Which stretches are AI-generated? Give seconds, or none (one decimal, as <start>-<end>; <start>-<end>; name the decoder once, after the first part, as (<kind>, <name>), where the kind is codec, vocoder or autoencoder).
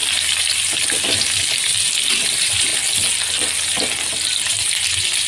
2.1-2.7 (vocoder, BigVGAN v2); 4.5-5.3